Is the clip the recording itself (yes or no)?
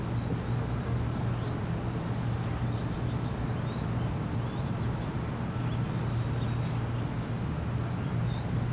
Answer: yes